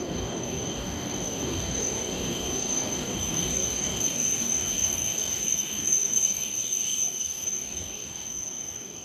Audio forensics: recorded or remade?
remade